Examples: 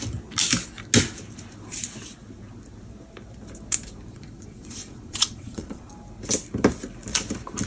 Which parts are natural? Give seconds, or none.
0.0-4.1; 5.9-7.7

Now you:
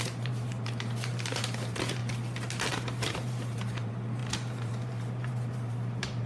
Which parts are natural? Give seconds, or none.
2.0-2.7

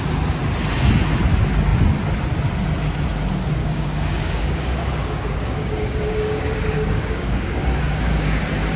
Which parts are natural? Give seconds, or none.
0.0-3.6; 8.4-8.8

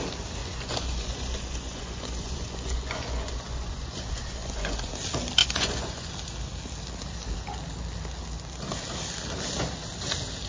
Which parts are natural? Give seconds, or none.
0.0-0.4; 4.9-5.4; 6.1-10.5

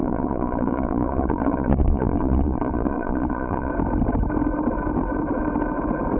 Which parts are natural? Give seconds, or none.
3.7-6.2